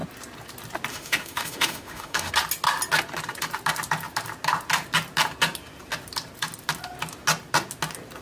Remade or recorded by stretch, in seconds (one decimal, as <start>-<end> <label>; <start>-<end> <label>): 0.0-0.9 recorded; 0.9-2.3 remade; 2.3-8.2 recorded